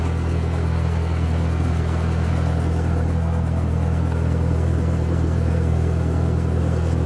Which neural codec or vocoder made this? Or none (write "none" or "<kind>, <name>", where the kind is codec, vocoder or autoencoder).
codec, SNAC